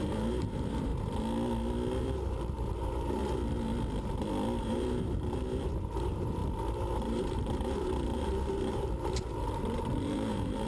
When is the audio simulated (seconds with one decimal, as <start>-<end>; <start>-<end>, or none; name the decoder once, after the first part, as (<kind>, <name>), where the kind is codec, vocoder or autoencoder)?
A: 0.0-0.9 (vocoder, BigVGAN v2); 2.0-3.2; 4.6-6.4; 7.0-10.7